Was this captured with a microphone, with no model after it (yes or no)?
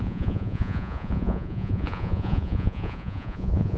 no